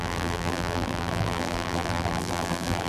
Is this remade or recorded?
remade